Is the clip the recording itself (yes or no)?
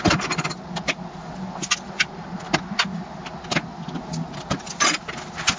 yes